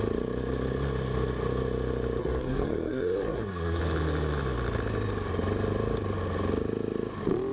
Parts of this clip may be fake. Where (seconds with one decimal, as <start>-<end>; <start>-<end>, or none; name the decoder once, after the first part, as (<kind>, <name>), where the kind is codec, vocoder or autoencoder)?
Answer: 2.2-3.8 (codec, SNAC)